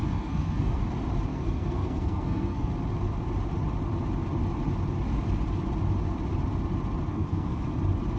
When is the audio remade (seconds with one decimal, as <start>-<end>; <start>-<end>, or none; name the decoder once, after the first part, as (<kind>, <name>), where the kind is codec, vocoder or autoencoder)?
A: 0.0-0.8 (codec, SNAC); 1.3-2.7; 7.1-7.6